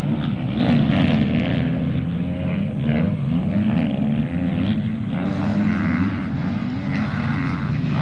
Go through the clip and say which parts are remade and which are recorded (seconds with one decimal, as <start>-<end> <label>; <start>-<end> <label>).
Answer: 0.0-8.0 recorded